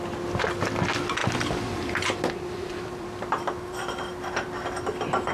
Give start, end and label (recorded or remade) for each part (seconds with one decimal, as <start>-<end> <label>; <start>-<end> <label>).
0.0-1.2 recorded; 1.2-4.0 remade; 4.0-5.3 recorded